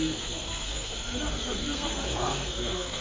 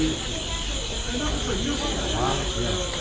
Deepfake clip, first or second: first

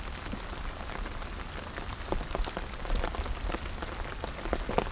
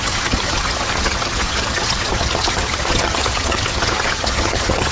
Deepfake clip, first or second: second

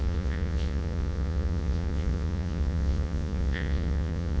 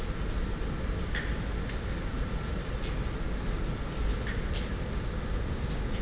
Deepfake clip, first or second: first